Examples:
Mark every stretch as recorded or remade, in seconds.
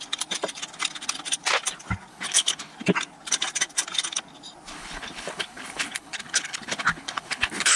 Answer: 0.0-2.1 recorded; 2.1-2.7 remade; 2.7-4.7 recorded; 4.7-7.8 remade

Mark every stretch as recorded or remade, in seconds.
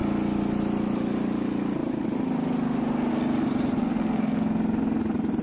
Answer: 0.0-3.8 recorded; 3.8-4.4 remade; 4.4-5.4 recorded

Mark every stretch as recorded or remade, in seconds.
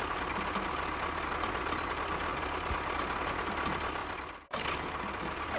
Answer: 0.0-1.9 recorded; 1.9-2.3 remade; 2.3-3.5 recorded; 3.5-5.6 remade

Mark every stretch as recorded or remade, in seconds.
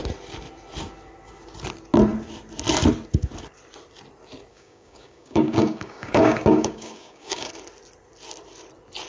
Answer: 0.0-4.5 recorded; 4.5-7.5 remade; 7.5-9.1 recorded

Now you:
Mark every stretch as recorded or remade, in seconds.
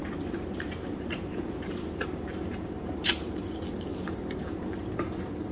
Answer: 0.0-3.3 remade; 3.3-5.5 recorded